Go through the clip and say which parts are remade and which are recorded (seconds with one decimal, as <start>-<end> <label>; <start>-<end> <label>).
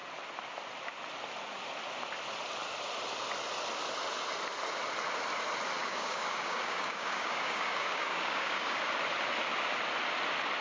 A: 0.0-5.8 recorded; 5.8-8.8 remade; 8.8-10.6 recorded